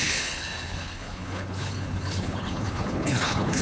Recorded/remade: remade